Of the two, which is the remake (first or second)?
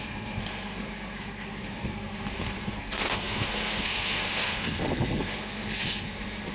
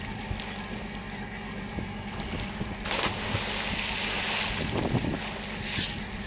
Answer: first